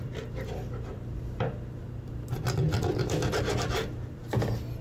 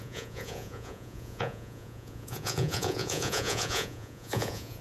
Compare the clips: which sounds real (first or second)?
first